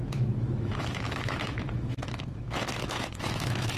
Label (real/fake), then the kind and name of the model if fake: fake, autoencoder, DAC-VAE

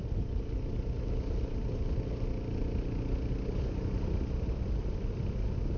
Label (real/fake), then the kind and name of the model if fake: real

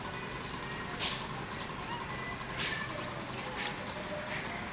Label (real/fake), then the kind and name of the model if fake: real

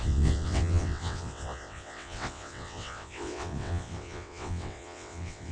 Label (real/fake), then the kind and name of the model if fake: fake, vocoder, WaveNeXt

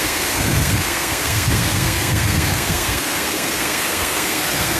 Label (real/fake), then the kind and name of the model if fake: fake, codec, SNAC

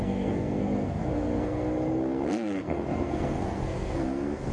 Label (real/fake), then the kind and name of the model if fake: fake, codec, SNAC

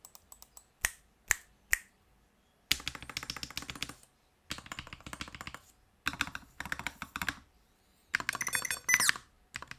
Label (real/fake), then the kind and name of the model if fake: real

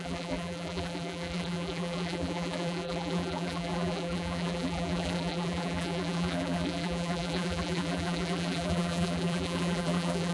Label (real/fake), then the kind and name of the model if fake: fake, vocoder, BigVGAN v2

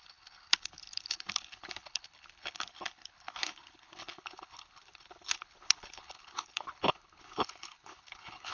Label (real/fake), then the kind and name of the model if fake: fake, codec, HILCodec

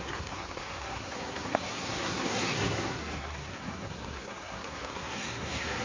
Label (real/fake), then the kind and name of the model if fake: fake, codec, SNAC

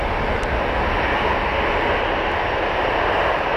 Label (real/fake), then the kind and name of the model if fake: real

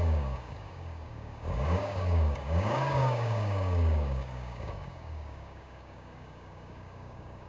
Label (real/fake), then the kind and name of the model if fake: fake, codec, DAC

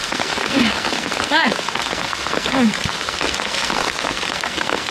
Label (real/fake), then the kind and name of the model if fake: fake, codec, SNAC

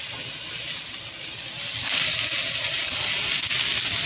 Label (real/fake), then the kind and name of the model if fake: real